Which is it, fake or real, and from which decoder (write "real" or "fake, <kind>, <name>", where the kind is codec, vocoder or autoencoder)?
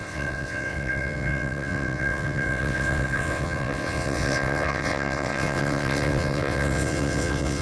fake, vocoder, WaveNeXt